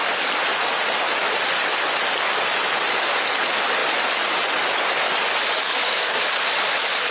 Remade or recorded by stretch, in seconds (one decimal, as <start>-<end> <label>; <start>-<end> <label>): 0.0-5.6 recorded; 5.6-6.3 remade; 6.3-7.1 recorded